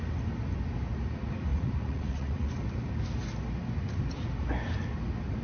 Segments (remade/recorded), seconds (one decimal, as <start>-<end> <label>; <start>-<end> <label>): 0.0-1.5 recorded; 1.5-2.5 remade; 2.5-5.4 recorded